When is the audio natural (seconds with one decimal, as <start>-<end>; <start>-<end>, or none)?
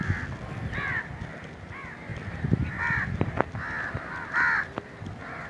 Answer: 0.0-5.5